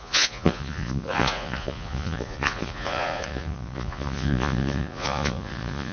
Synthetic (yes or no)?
yes